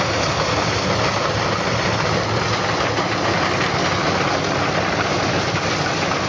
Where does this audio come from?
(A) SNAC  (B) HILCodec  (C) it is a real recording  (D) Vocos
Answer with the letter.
C